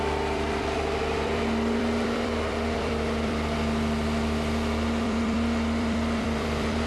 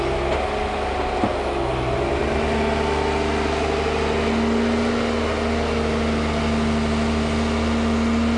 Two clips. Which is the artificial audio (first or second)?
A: first